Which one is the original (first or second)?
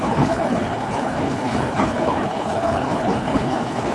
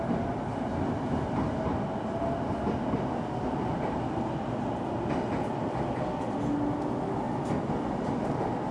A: second